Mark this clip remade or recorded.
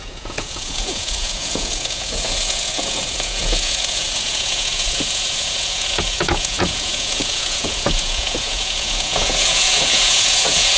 remade